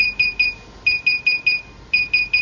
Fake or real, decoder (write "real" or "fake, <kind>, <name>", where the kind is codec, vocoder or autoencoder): real